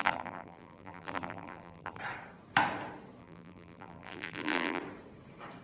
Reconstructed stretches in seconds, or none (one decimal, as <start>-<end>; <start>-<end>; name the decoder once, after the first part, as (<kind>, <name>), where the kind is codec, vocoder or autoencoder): 0.0-2.0 (vocoder, BigVGAN v2); 3.2-4.8